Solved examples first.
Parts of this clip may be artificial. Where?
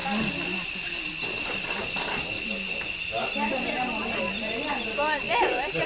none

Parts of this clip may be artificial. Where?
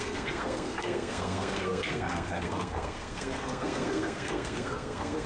0.0-5.3 (codec, SNAC)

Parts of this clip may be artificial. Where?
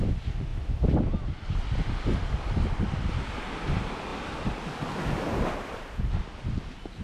none